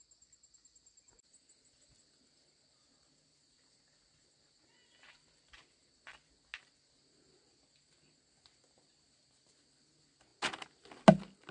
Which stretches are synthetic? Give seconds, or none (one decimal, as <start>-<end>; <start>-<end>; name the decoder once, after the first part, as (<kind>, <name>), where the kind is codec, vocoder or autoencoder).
none